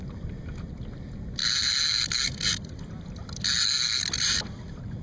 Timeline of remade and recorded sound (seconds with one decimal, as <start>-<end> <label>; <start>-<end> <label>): 0.0-5.0 recorded